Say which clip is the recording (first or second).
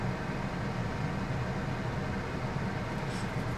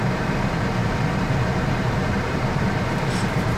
first